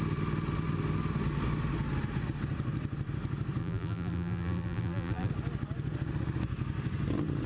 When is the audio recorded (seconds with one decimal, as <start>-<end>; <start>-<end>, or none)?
0.0-3.6; 5.3-7.5